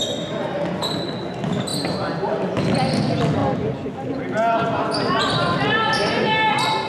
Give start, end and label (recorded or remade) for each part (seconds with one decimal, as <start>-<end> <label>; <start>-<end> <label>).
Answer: 0.0-6.9 recorded